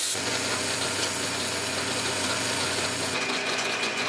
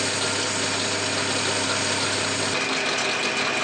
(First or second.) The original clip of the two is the second